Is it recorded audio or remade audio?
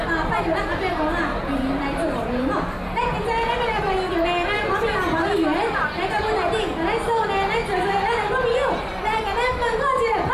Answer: recorded